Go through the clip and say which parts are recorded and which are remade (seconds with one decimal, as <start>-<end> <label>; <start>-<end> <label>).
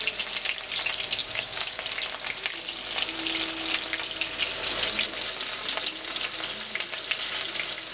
0.0-1.2 recorded; 1.2-1.8 remade; 1.8-7.9 recorded